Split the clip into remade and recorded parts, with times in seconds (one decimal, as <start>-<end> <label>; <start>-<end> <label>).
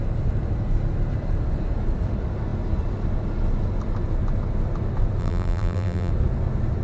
0.0-5.2 recorded; 5.2-6.1 remade; 6.1-6.8 recorded